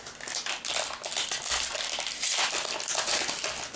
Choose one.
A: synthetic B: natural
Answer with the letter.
B